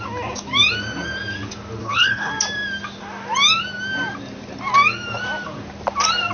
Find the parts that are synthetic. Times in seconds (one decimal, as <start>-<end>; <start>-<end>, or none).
1.8-2.3